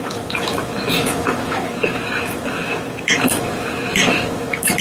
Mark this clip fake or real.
fake